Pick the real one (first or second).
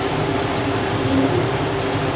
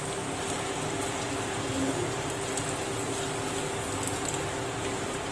second